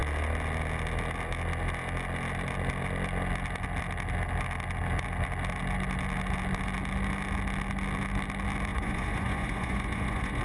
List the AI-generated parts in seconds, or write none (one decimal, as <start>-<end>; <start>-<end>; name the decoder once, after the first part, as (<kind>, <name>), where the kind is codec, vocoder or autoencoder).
8.7-10.4 (vocoder, Vocos)